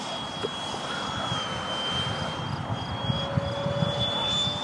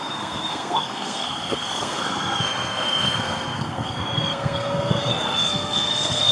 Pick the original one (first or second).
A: first